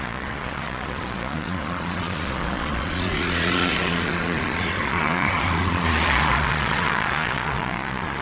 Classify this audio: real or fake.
fake